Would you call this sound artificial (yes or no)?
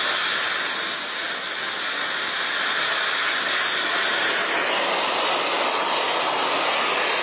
no